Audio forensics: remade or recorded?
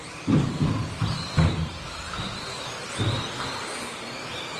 recorded